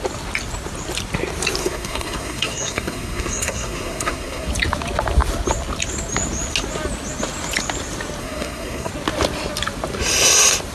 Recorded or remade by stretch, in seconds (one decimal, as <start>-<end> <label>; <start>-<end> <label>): 0.0-1.6 recorded; 1.6-4.5 remade; 4.5-8.2 recorded; 8.2-8.9 remade; 8.9-10.7 recorded